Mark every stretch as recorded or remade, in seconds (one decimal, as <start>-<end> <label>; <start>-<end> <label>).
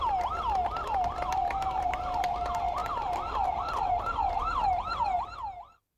0.0-6.0 recorded